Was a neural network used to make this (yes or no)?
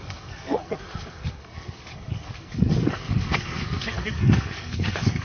yes